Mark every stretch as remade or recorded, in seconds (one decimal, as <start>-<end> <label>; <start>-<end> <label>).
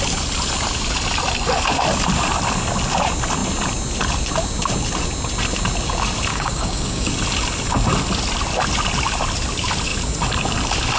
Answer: 0.0-6.3 recorded; 6.3-7.1 remade; 7.1-11.0 recorded